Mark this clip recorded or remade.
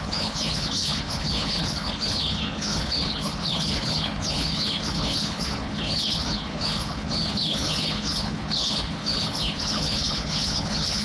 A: remade